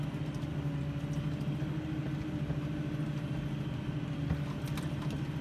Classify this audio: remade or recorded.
recorded